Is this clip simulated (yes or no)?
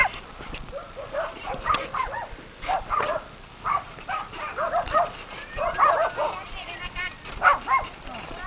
yes